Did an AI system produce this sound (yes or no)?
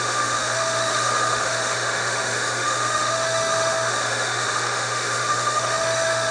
yes